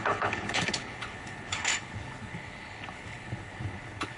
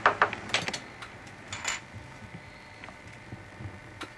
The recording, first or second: second